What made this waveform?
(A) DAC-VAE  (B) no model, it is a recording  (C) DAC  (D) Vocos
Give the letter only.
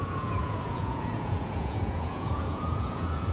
D